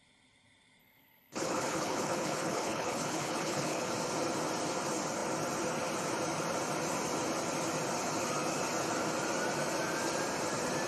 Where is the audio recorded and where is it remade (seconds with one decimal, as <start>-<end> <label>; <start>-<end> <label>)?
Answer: 0.0-0.8 recorded; 0.8-3.9 remade; 3.9-10.9 recorded